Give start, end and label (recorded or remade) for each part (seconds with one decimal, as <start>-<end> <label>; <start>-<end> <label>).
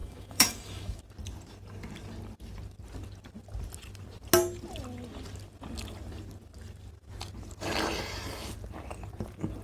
0.0-1.0 remade; 1.0-9.6 recorded